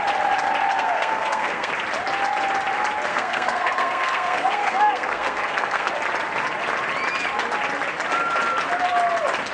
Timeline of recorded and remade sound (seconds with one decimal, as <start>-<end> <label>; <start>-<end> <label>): 0.0-0.7 recorded; 0.7-1.7 remade; 1.7-3.1 recorded; 3.1-5.9 remade; 5.9-9.5 recorded